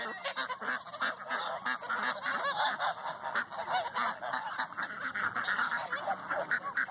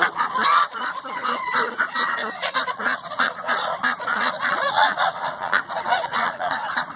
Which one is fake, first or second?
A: second